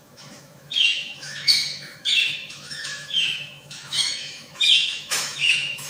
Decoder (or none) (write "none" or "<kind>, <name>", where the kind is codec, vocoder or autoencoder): autoencoder, DAC-VAE